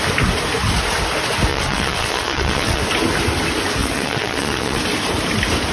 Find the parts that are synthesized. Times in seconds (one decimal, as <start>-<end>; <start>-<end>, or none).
1.5-2.8; 3.8-4.8

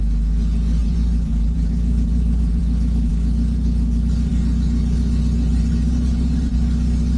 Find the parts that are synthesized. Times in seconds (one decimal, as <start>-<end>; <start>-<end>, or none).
0.8-2.6; 5.5-6.5

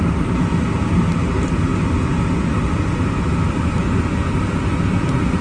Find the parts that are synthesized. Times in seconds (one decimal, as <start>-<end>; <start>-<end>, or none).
0.5-1.7; 4.9-5.4

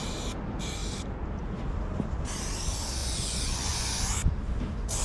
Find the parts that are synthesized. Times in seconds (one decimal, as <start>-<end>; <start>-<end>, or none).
3.0-4.0

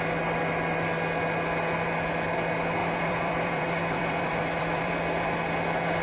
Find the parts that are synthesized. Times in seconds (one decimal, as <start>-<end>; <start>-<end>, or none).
2.8-4.9

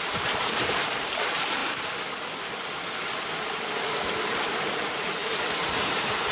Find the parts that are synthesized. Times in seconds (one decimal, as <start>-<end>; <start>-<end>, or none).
0.0-1.6; 4.1-6.3